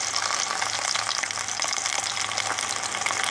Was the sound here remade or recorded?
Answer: recorded